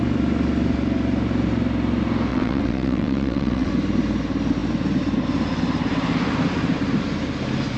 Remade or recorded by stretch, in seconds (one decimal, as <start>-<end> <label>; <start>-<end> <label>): 0.0-2.3 recorded; 2.3-3.7 remade; 3.7-7.8 recorded